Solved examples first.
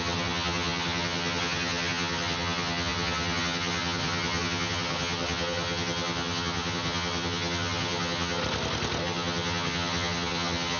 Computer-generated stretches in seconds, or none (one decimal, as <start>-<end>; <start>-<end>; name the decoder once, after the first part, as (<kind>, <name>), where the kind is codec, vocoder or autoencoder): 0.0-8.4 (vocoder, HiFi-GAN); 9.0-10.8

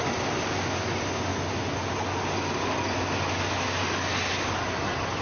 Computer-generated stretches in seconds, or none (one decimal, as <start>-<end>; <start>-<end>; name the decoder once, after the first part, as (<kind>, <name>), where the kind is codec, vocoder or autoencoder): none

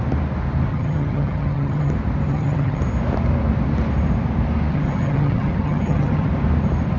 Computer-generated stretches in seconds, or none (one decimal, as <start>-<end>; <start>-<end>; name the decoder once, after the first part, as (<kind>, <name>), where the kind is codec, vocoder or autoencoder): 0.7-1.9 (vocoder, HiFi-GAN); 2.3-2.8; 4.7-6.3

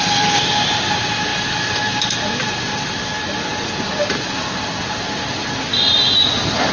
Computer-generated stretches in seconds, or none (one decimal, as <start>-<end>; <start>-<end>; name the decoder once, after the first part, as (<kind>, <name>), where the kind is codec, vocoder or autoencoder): none

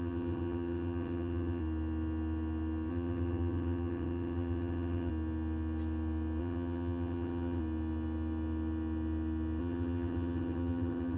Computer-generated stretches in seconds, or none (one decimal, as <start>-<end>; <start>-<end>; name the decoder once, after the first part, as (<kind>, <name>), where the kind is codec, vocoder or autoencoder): 0.0-1.6 (vocoder, HiFi-GAN); 2.9-5.1; 6.4-7.6; 9.6-11.2

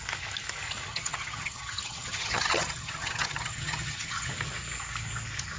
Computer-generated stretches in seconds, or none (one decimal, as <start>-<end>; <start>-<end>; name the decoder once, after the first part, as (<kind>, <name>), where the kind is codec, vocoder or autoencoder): 0.9-4.3 (vocoder, HiFi-GAN)

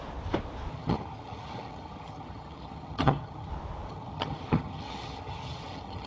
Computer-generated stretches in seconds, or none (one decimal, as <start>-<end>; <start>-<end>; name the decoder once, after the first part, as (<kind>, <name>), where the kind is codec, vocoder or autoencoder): 0.7-3.5 (vocoder, HiFi-GAN); 3.9-6.1

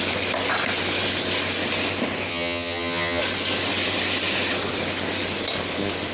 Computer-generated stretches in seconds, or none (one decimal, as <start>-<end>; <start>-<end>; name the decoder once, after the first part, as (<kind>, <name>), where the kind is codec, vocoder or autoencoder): 2.3-3.2 (vocoder, HiFi-GAN)